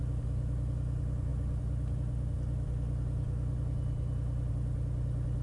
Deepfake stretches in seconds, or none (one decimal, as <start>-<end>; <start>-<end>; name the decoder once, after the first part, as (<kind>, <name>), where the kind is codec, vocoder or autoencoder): none